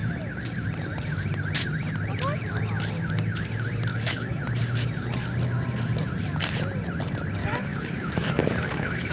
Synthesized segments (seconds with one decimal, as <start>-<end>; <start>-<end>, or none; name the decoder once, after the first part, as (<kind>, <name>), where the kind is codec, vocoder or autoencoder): 3.9-4.4 (codec, DAC); 7.4-9.1